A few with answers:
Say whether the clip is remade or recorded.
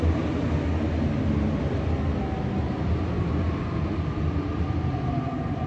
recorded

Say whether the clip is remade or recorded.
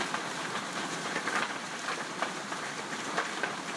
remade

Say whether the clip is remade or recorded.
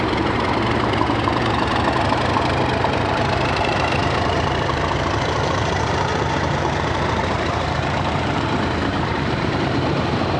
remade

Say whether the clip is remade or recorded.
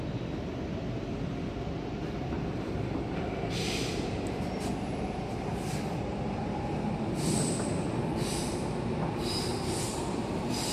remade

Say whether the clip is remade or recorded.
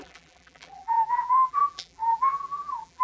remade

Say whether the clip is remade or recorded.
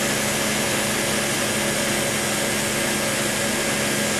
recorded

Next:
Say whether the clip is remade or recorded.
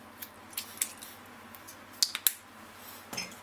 recorded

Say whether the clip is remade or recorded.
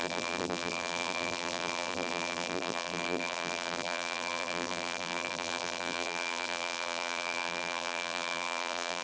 remade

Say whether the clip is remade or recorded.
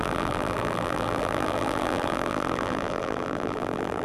remade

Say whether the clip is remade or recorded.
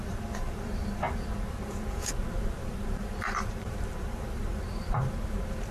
remade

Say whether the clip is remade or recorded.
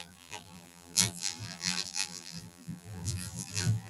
remade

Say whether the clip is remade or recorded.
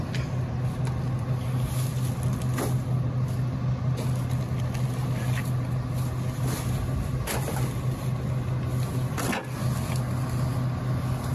recorded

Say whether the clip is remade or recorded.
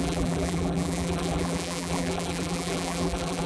remade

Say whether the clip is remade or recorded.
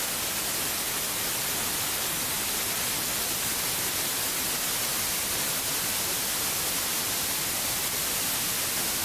recorded